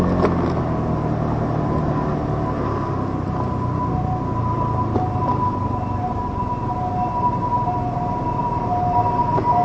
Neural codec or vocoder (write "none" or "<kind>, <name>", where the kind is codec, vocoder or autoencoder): none